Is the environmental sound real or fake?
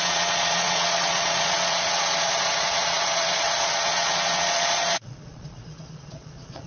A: fake